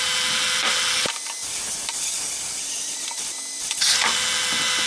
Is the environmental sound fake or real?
real